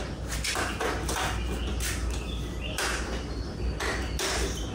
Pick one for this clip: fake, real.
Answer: real